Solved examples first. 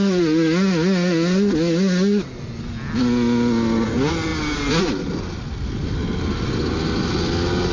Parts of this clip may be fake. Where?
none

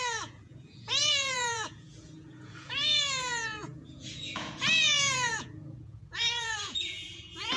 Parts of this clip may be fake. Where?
0.0-7.6

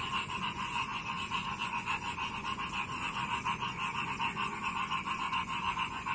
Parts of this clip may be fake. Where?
0.0-6.1

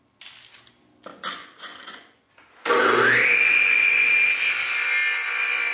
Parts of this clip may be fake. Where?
1.1-2.3; 3.4-4.1

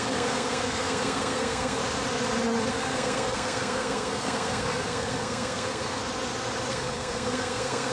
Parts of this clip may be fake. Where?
0.0-1.8; 2.7-6.0; 6.7-7.9

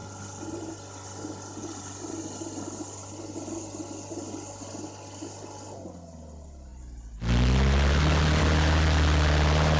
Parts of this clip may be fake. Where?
none